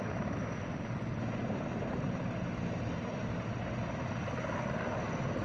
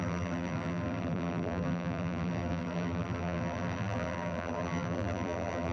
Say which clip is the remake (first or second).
second